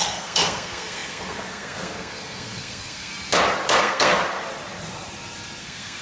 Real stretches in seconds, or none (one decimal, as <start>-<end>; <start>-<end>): 3.1-3.8; 4.2-5.6